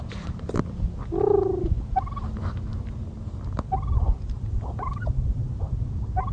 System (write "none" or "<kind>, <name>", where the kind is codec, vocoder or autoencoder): none